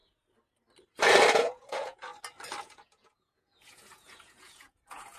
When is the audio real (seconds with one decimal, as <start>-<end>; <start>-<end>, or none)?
0.0-1.3; 2.1-2.6